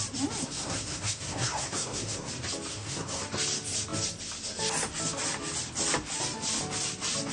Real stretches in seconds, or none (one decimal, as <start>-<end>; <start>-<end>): 0.0-0.4; 2.3-2.7; 3.2-7.3